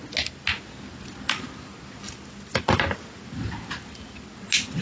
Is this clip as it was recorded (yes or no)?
yes